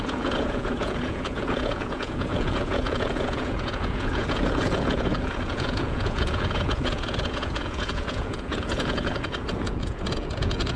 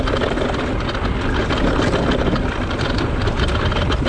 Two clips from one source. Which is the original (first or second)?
second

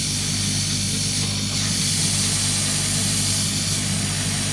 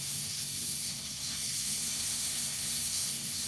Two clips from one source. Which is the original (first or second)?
first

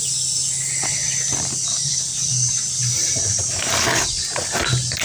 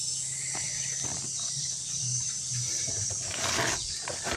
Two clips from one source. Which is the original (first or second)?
first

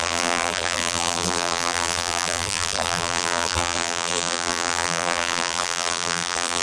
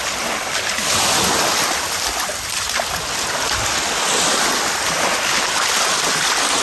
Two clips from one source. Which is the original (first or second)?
second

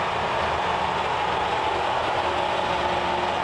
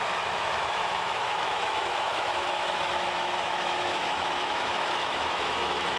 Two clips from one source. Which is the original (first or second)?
first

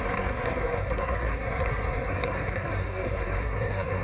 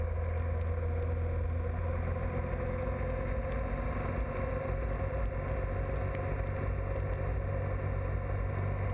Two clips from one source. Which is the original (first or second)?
second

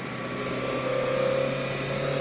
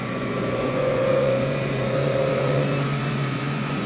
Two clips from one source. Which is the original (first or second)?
first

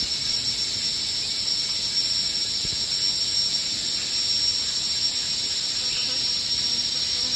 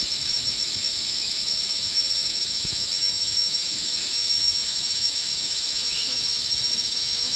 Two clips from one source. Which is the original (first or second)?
first